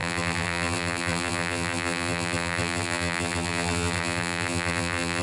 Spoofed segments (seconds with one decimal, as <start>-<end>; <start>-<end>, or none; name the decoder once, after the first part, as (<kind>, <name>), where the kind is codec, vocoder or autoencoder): 0.0-5.2 (vocoder, BigVGAN v2)